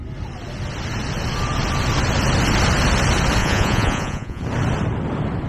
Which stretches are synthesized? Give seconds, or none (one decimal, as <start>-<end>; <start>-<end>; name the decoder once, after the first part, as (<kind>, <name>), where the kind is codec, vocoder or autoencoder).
3.4-4.4 (vocoder, Vocos)

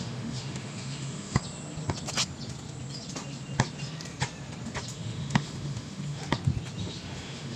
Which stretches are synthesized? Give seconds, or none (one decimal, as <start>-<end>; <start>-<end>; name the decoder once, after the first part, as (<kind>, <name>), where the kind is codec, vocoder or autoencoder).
0.0-1.4 (autoencoder, DAC-VAE); 4.9-6.2; 6.8-7.6

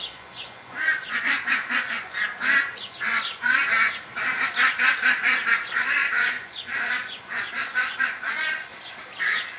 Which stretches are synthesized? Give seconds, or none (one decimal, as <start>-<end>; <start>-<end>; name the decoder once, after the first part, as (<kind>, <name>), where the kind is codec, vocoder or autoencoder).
0.0-3.6 (vocoder, Vocos); 5.2-8.7; 9.2-9.6